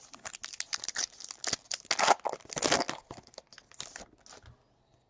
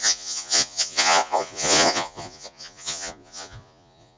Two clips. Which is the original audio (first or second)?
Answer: first